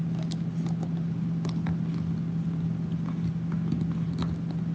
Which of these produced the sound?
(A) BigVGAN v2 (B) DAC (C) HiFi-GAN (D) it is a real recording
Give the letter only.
D